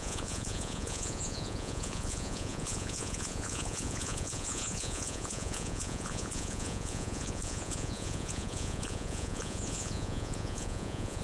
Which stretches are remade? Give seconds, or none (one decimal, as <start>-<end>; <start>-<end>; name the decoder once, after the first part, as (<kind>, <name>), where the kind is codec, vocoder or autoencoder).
0.0-11.2 (vocoder, Vocos)